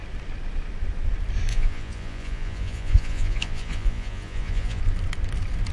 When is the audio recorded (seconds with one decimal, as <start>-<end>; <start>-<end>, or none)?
0.0-1.5; 4.8-5.7